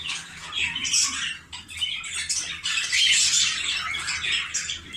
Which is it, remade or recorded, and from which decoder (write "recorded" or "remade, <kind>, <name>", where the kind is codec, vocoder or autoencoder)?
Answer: recorded